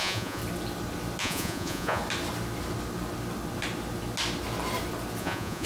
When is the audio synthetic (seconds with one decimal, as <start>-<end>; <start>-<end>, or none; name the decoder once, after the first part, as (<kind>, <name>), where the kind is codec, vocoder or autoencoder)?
0.0-0.4 (vocoder, Vocos); 1.2-2.0; 5.2-5.7